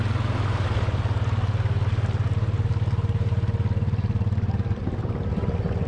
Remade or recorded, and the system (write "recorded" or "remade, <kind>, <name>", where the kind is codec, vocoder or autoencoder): recorded